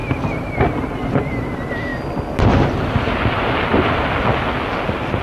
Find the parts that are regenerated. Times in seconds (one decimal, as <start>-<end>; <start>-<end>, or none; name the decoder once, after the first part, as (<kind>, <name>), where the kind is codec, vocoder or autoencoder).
none